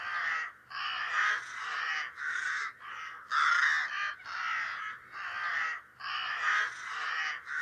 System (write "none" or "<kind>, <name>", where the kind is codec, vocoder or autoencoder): none